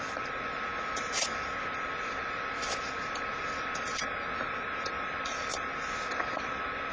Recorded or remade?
remade